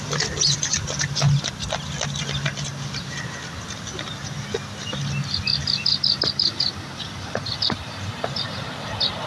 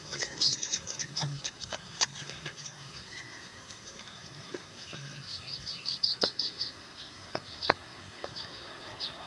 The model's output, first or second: second